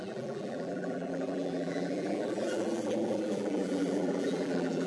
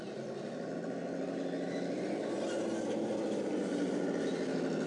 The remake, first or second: first